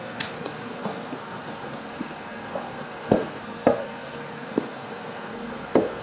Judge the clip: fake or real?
fake